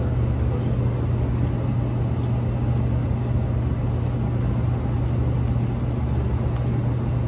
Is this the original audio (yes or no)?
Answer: yes